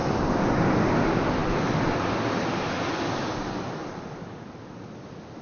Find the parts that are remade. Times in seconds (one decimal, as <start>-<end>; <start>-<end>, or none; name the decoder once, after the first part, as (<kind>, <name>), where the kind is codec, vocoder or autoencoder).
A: none